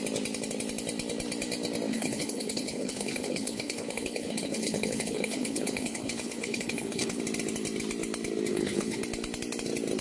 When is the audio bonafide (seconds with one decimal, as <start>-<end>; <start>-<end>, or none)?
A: 0.0-1.9; 7.2-8.5; 9.0-10.0